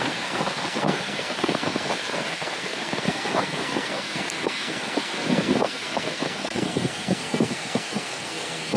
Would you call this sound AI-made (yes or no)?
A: yes